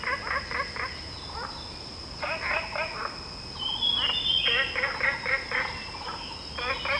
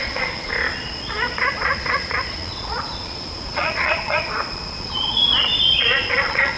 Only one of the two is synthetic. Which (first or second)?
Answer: second